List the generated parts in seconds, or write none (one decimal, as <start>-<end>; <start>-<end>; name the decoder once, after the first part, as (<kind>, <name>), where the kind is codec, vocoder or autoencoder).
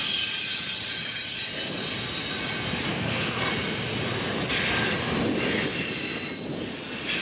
2.9-3.5 (codec, SNAC)